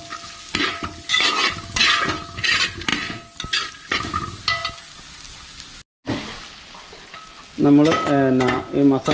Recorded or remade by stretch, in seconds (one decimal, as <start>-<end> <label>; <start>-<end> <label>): 0.0-9.1 recorded